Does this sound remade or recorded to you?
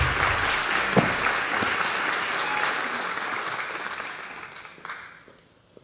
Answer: recorded